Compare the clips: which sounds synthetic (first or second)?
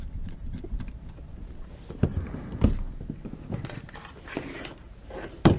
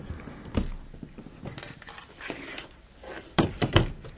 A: first